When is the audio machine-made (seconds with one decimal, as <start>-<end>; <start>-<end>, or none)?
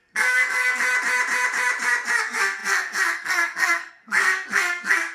0.0-0.8; 2.2-5.1